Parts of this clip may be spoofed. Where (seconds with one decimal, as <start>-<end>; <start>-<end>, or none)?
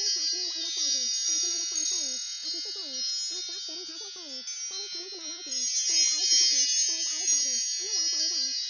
none